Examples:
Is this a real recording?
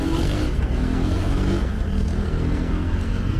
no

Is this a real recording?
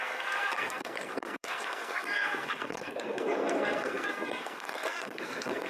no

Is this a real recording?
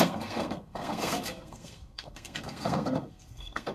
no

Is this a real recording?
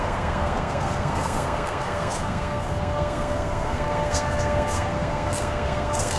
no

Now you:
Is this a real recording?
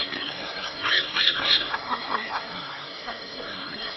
no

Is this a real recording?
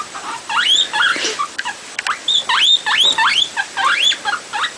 yes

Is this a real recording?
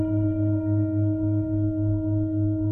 no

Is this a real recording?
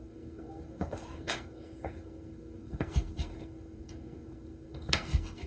no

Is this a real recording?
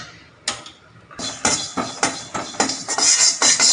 yes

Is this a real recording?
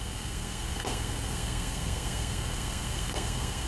no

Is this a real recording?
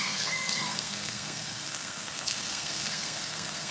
no